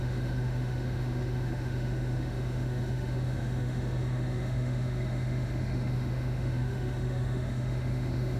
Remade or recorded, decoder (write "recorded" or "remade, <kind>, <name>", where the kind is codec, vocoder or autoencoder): remade, autoencoder, DAC-VAE